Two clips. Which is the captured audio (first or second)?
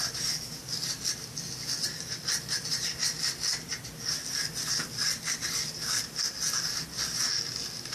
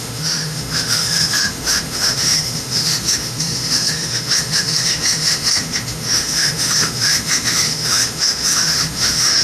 first